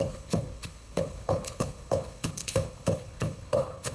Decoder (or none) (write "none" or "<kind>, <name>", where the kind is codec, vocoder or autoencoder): codec, HILCodec